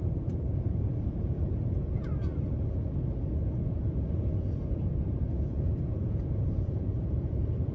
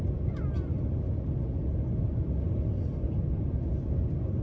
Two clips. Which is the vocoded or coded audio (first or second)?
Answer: first